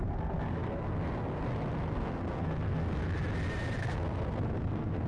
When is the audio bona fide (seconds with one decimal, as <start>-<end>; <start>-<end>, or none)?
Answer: 0.7-1.9; 3.0-3.8